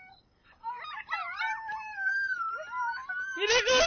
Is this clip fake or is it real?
fake